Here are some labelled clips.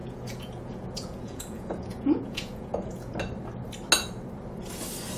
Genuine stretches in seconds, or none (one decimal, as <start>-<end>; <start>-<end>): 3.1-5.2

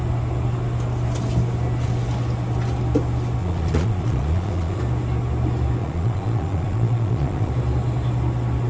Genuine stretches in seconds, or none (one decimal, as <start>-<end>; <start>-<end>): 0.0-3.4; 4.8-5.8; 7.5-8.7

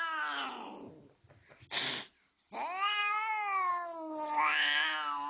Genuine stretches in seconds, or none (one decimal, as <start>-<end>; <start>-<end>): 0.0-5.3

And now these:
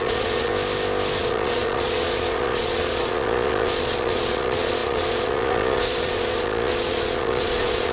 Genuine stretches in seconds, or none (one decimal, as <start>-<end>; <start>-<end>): 0.5-1.2

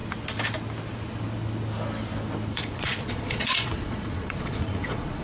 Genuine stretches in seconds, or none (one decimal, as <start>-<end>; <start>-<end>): 0.0-2.5

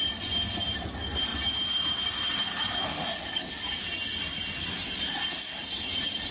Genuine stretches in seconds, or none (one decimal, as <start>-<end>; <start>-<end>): 0.0-6.3